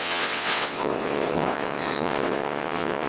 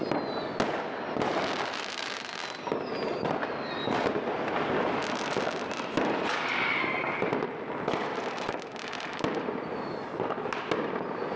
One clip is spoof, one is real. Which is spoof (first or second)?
first